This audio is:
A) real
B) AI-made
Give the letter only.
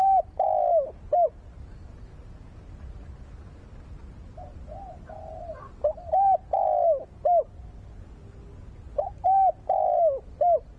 A